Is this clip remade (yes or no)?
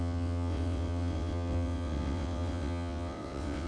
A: yes